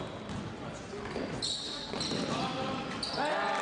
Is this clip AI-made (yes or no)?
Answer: no